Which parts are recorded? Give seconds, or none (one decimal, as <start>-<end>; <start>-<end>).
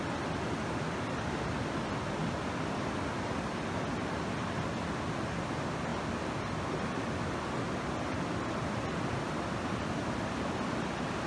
0.0-11.3